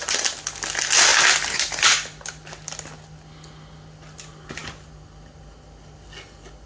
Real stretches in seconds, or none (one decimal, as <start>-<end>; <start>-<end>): 0.0-6.7

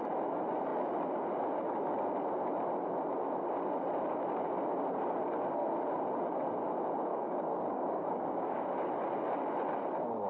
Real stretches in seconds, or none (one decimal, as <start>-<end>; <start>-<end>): 0.0-7.1; 8.7-10.3

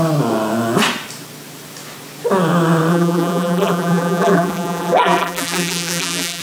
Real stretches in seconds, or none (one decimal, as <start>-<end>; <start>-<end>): 0.0-2.9